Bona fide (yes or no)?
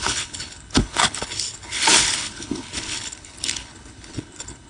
no